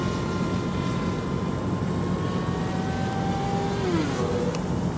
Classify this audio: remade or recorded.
recorded